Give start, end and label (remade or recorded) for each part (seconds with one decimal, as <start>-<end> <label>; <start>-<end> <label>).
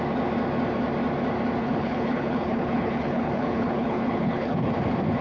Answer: 0.0-1.6 recorded; 1.6-4.7 remade; 4.7-5.2 recorded